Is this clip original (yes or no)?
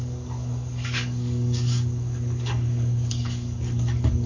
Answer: no